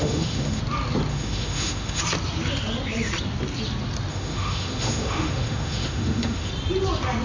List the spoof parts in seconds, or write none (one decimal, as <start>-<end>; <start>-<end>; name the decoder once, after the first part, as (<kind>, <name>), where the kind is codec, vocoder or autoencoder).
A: 0.0-0.6 (autoencoder, DAC-VAE); 1.1-2.0; 4.1-6.5